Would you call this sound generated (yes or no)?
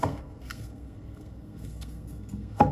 yes